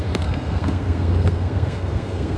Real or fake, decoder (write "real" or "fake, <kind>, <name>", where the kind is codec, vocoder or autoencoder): fake, codec, SNAC